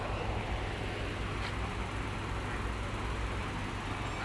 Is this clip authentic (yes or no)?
yes